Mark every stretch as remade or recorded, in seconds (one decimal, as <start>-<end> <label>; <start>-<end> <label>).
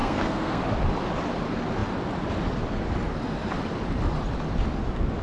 0.0-0.6 remade; 0.6-5.2 recorded